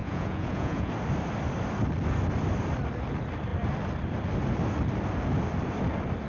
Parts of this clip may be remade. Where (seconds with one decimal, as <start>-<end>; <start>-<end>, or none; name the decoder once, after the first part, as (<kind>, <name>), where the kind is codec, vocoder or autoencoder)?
0.0-0.9 (vocoder, Vocos)